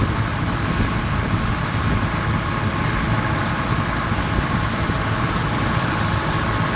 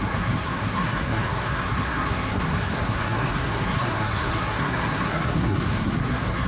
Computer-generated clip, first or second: second